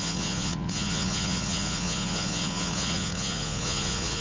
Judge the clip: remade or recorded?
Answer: remade